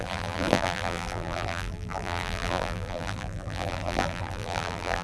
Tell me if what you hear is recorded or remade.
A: remade